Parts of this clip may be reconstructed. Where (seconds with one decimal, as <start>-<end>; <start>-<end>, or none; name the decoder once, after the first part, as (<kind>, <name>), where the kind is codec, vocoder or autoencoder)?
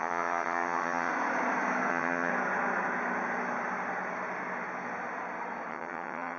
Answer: 0.0-1.1 (vocoder, HiFi-GAN); 1.9-2.3; 5.7-6.4